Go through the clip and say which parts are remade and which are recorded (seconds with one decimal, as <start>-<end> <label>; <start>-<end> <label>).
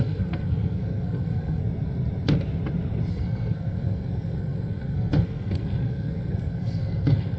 0.0-1.6 remade; 1.6-3.1 recorded; 3.1-7.4 remade